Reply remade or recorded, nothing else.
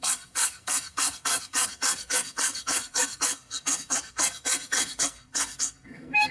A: remade